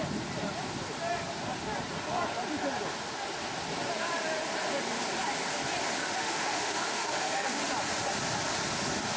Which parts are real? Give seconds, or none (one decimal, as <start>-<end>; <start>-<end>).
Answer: 0.0-6.0; 7.6-9.2